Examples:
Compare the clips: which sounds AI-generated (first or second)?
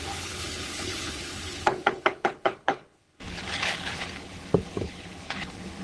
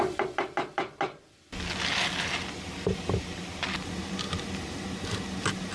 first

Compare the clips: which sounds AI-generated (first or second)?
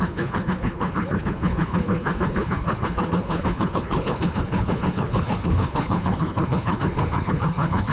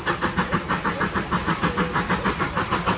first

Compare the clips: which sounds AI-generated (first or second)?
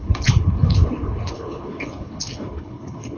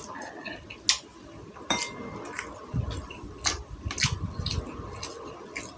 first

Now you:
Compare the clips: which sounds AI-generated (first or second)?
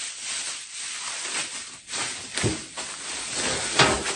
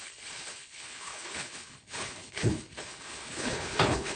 second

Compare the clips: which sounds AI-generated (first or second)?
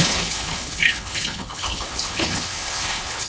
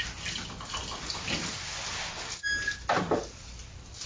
first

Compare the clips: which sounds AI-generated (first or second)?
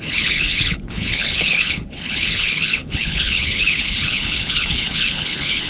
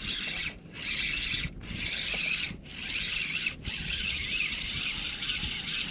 first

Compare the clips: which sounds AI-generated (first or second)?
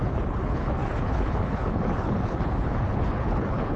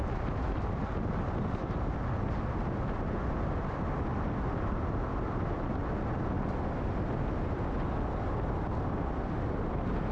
first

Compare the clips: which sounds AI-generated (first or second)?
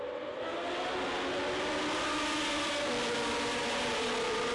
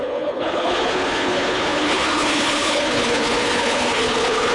second